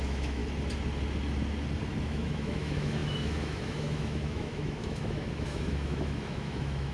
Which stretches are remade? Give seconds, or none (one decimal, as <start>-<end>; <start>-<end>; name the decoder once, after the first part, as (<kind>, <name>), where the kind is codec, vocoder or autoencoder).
0.0-0.4 (autoencoder, DAC-VAE); 2.0-6.9